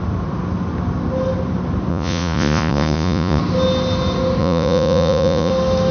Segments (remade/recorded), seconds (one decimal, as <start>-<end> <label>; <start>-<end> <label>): 0.0-1.9 recorded; 1.9-3.4 remade; 3.4-4.4 recorded; 4.4-5.5 remade; 5.5-5.9 recorded